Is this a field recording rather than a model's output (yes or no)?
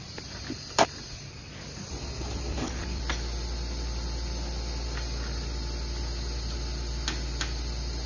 yes